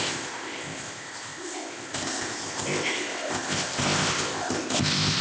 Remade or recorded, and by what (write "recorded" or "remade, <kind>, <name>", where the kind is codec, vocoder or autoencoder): remade, codec, ZipCodec